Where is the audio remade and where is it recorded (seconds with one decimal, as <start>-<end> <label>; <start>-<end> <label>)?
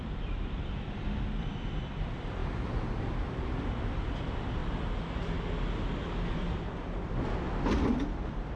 0.0-4.6 remade; 4.6-7.7 recorded; 7.7-8.6 remade